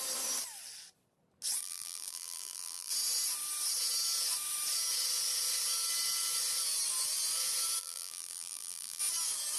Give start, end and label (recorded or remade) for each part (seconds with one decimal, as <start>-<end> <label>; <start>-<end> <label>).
0.0-1.6 recorded; 1.6-2.9 remade; 2.9-7.8 recorded; 7.8-9.0 remade; 9.0-9.6 recorded